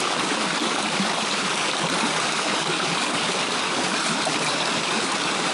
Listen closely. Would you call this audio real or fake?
fake